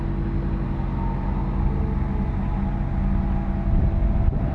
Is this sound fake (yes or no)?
no